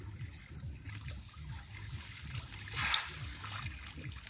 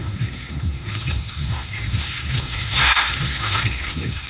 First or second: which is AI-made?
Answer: second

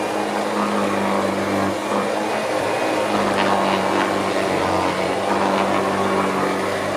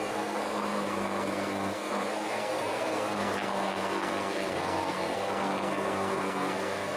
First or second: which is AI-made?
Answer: second